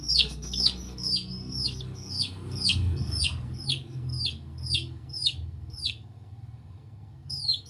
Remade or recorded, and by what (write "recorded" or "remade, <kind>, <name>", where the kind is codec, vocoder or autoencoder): remade, codec, SNAC